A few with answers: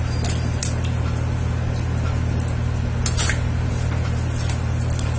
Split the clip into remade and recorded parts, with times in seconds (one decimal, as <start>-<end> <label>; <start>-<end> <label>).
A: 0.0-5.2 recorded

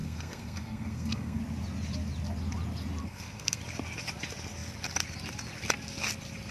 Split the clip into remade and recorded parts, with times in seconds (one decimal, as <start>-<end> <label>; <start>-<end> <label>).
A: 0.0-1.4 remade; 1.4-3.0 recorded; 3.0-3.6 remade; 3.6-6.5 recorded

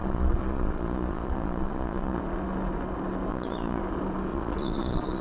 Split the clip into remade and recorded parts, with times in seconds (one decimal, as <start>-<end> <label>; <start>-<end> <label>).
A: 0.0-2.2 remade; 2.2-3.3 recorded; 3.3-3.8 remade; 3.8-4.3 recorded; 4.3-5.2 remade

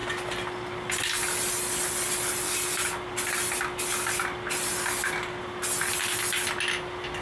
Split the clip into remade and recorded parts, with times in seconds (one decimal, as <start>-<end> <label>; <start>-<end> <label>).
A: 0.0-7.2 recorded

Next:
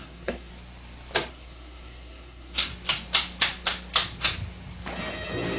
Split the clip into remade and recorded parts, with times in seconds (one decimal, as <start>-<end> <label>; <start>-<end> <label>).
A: 0.0-0.5 remade; 0.5-1.3 recorded; 1.3-2.7 remade; 2.7-5.6 recorded

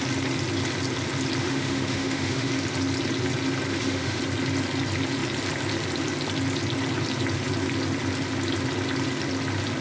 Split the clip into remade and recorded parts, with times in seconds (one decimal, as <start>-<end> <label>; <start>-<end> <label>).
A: 0.0-1.4 recorded; 1.4-2.5 remade; 2.5-3.7 recorded; 3.7-4.2 remade; 4.2-9.8 recorded